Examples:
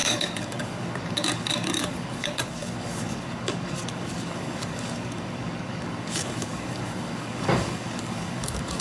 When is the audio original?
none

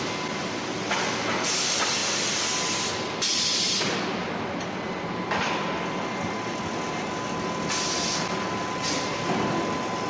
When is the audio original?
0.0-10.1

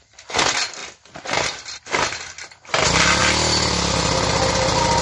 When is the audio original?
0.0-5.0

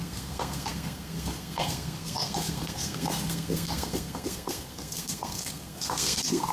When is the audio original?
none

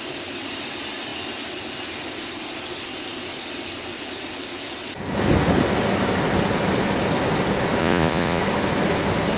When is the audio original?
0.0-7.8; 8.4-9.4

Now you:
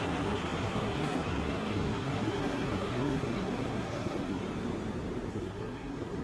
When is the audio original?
4.4-5.3

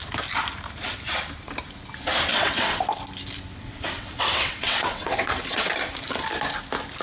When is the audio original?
0.0-2.3; 2.8-3.5; 5.7-7.0